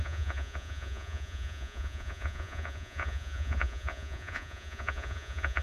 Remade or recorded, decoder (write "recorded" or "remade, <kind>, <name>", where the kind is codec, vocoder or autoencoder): remade, vocoder, Vocos